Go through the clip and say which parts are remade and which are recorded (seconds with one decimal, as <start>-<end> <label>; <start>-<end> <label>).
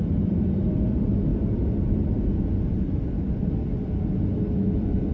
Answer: 0.0-5.1 recorded